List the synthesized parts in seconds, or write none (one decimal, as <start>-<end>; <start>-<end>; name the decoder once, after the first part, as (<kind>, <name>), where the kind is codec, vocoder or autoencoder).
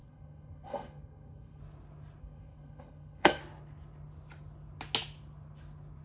0.0-1.6 (codec, SNAC); 2.2-3.4